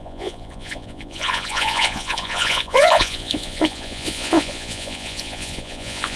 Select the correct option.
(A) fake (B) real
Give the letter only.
A